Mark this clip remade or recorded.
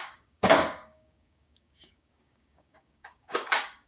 remade